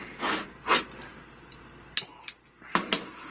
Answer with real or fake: real